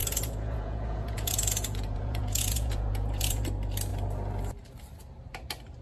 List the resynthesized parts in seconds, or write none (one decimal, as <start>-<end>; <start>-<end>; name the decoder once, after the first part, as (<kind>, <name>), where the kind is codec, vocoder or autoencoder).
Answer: 0.0-3.5 (vocoder, Vocos)